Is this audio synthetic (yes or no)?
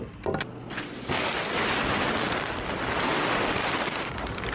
no